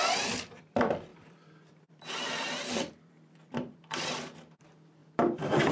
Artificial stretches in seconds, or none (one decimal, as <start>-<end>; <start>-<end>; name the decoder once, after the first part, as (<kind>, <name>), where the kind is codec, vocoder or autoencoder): 0.0-5.7 (vocoder, BigVGAN v2)